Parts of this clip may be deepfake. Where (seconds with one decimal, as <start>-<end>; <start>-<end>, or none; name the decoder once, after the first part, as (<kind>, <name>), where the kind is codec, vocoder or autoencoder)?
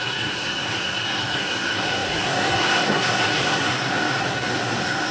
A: 0.0-5.1 (codec, SNAC)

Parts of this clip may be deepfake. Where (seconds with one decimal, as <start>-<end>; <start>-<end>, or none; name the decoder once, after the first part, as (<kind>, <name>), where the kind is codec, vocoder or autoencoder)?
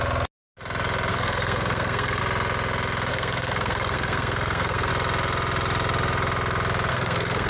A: 1.1-2.2 (codec, SNAC); 3.1-4.9; 6.9-7.5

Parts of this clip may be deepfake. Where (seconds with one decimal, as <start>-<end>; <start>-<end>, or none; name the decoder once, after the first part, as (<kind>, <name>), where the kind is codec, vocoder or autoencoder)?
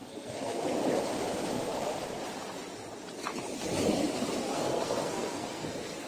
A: 0.0-0.8 (codec, SNAC); 1.5-1.9; 4.4-6.1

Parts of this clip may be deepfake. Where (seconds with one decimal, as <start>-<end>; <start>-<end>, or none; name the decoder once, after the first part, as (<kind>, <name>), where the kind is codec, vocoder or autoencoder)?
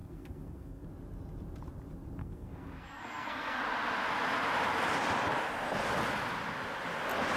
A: 0.0-0.9 (codec, SNAC); 2.2-3.6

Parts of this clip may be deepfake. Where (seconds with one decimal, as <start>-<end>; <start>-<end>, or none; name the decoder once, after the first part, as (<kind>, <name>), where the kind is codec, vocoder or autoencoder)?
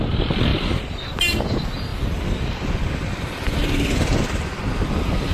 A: none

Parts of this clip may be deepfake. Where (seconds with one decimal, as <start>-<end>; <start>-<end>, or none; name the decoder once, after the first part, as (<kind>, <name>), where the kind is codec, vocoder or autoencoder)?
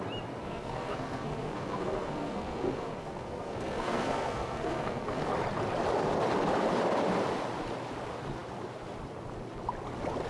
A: 0.4-5.3 (codec, SNAC)